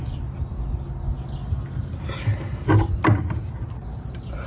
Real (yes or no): yes